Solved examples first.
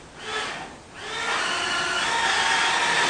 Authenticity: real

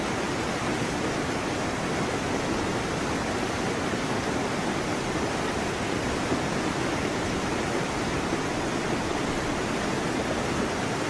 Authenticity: real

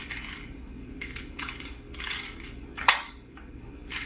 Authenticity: fake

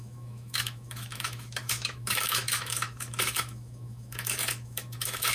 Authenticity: fake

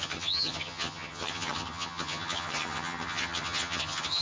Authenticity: fake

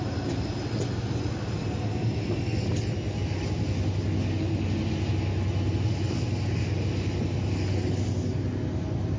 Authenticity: real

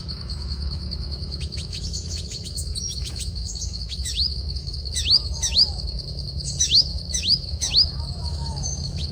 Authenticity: fake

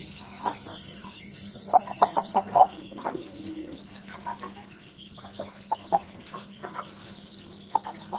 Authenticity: fake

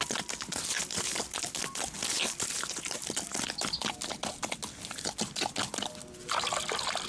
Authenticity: real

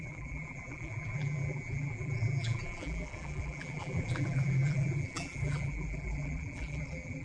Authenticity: fake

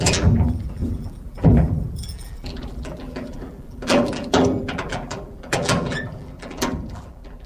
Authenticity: fake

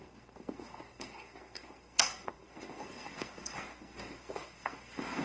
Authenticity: fake